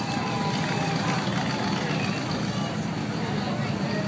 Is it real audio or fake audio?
real